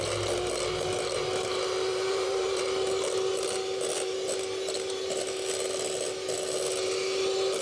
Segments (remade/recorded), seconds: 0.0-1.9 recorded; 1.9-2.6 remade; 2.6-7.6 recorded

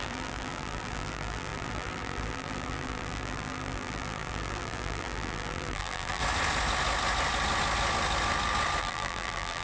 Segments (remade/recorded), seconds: 0.0-6.2 remade; 6.2-8.8 recorded; 8.8-9.6 remade

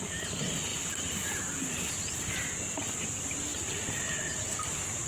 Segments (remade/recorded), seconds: 0.0-0.7 recorded; 0.7-2.3 remade; 2.3-5.1 recorded

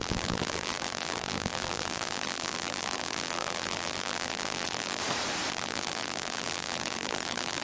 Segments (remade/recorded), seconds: 0.0-5.0 remade; 5.0-5.5 recorded; 5.5-7.6 remade

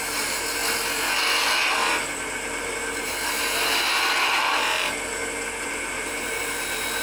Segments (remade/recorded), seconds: 0.0-0.6 remade; 0.6-1.9 recorded; 1.9-4.8 remade; 4.8-5.6 recorded; 5.6-7.0 remade

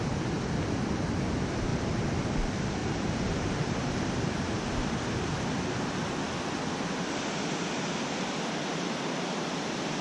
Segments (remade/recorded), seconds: 0.0-2.8 recorded; 2.8-5.1 remade; 5.1-10.0 recorded

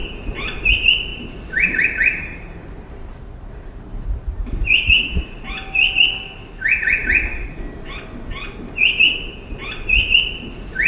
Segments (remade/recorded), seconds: 0.0-0.7 remade; 0.7-1.1 recorded; 1.1-5.4 remade; 5.4-10.9 recorded

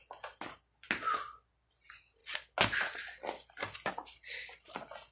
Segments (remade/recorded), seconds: 0.0-5.1 recorded